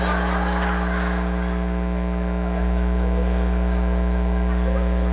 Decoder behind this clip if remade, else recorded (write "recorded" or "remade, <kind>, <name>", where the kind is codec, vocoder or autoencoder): recorded